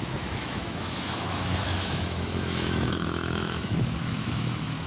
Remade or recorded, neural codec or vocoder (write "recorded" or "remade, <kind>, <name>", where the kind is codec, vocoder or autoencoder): remade, autoencoder, DAC-VAE